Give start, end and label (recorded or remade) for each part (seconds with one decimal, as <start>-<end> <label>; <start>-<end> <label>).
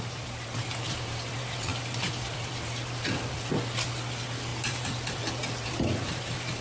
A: 0.0-4.5 recorded; 4.5-5.3 remade; 5.3-6.6 recorded